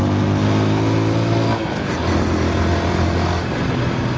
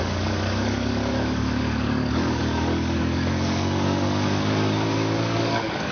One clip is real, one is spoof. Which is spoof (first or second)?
second